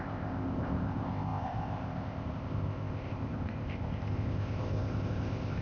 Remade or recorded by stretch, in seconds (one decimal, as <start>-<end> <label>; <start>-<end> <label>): 0.0-5.6 remade